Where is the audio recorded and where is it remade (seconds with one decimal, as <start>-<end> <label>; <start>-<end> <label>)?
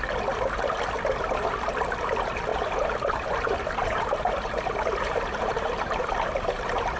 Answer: 0.0-2.5 recorded; 2.5-7.0 remade